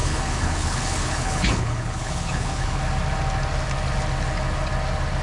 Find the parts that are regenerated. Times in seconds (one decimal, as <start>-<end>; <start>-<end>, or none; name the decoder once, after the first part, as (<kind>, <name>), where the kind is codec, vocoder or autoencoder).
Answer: 0.0-2.8 (codec, HILCodec)